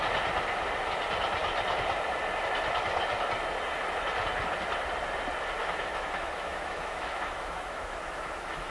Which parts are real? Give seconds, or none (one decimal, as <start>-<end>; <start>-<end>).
0.0-5.6